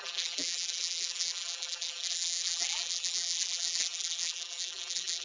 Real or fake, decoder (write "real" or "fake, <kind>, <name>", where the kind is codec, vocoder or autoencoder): fake, vocoder, BigVGAN v2